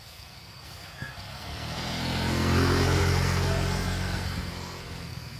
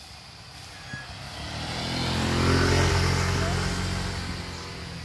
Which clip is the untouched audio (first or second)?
second